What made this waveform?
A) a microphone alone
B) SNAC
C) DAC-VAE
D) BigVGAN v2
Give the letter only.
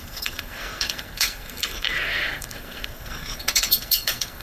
B